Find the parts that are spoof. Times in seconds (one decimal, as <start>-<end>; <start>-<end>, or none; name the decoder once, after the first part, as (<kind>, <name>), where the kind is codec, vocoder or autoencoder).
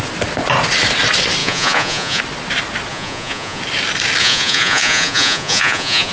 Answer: 1.4-2.2 (vocoder, Vocos); 2.9-3.6; 4.2-6.1